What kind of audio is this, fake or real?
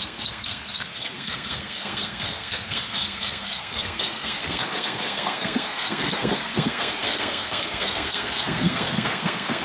fake